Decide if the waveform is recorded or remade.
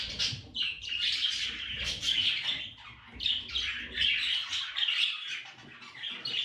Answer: recorded